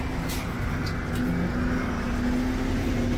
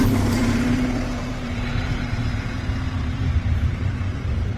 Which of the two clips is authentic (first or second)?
first